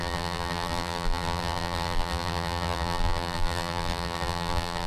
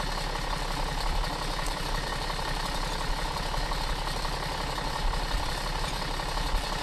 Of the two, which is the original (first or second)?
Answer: second